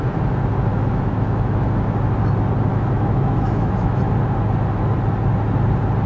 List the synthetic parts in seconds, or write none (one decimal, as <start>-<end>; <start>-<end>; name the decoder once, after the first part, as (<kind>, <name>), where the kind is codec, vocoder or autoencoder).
0.7-1.5 (autoencoder, DAC-VAE); 2.7-4.0